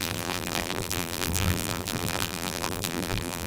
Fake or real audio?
fake